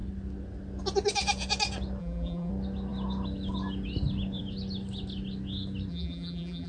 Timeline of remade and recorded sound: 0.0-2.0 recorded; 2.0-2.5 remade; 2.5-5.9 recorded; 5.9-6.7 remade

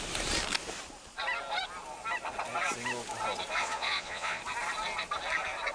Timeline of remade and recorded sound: 0.0-3.6 recorded; 3.6-4.4 remade; 4.4-5.7 recorded